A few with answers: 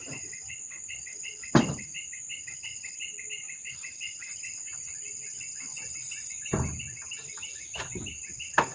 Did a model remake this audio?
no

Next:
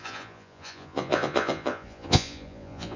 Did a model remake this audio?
yes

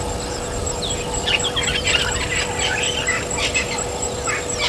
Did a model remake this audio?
no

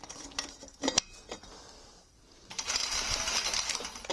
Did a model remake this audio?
no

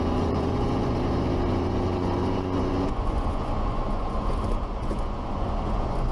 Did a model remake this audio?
yes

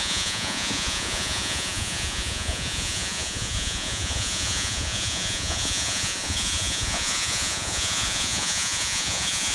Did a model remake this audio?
yes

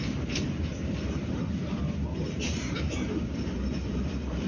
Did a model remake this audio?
no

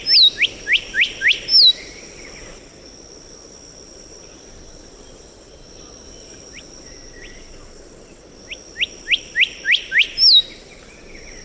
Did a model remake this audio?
no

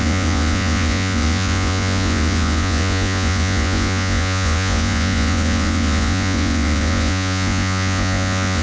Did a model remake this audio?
yes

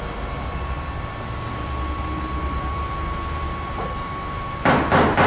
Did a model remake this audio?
no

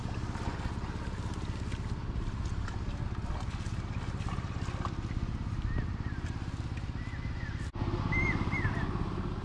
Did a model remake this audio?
no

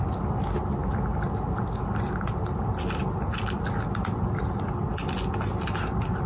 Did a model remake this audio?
no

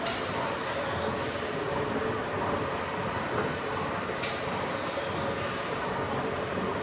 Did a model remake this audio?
no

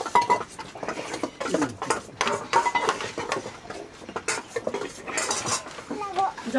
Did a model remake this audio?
no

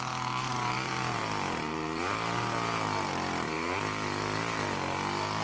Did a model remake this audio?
no